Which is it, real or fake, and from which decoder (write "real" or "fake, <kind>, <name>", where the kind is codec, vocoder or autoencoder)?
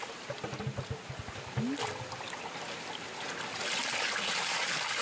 real